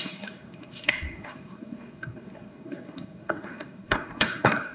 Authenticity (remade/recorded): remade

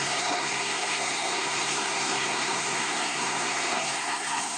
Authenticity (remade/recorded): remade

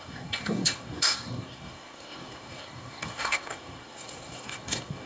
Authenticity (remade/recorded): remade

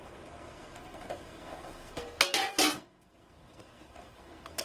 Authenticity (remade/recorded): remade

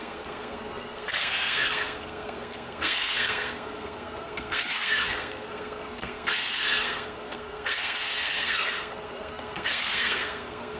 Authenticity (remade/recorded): remade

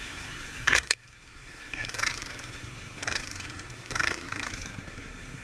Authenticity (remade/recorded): remade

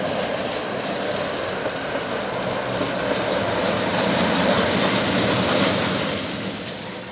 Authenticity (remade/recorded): recorded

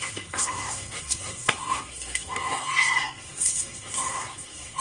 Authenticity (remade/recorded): remade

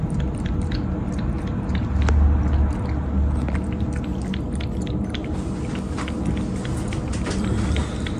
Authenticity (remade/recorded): recorded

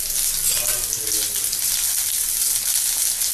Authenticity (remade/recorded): recorded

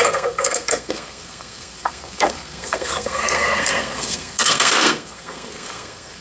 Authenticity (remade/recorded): remade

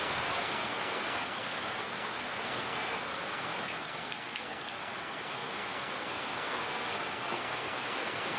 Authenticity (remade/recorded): remade